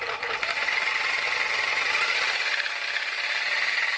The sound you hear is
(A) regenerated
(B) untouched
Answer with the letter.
B